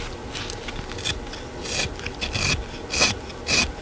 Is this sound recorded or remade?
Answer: recorded